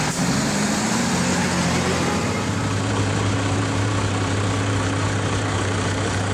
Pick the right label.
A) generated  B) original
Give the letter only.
A